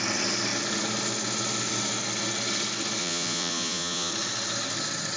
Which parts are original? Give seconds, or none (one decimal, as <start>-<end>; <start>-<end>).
0.0-3.0; 4.1-5.2